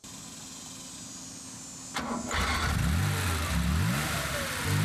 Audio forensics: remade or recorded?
recorded